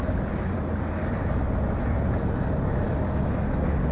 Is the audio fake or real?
real